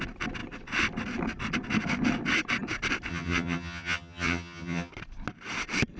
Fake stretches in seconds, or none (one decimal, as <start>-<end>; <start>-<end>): 3.1-4.9